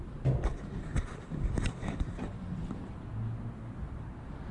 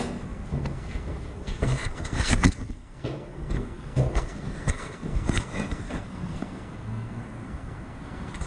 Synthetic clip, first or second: second